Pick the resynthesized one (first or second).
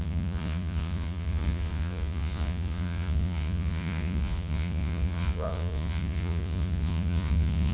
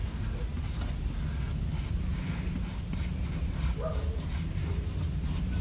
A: first